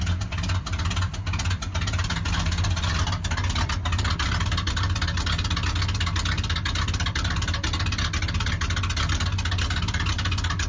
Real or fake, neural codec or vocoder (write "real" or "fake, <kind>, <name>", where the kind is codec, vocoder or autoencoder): real